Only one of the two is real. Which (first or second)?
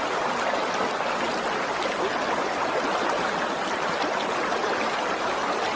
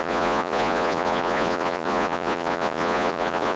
first